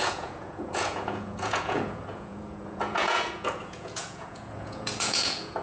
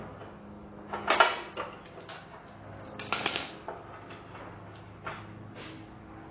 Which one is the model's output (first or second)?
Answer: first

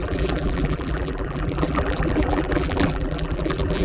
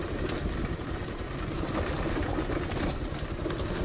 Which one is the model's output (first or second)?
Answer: first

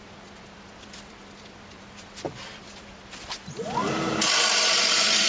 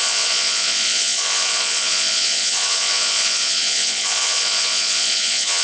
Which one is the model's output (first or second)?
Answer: second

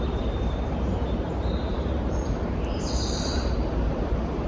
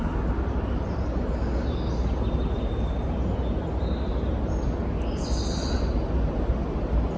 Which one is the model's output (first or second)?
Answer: first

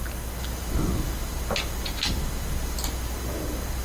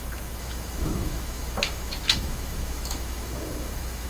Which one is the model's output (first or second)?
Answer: second